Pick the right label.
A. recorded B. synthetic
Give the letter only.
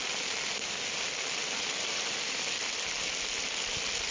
A